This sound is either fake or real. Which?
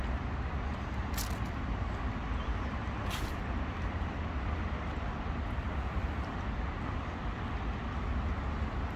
real